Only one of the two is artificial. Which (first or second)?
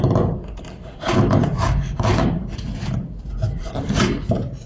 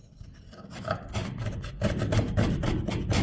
first